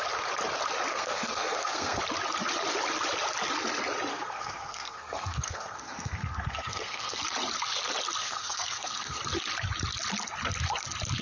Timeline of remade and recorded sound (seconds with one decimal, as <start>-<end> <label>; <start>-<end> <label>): 0.0-0.9 recorded; 0.9-2.0 remade; 2.0-4.1 recorded; 4.1-7.2 remade; 7.2-8.2 recorded; 8.2-9.2 remade; 9.2-11.2 recorded